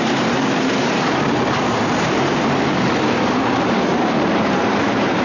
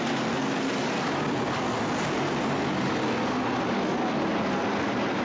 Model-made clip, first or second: first